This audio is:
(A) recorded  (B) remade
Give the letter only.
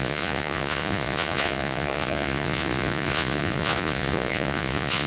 B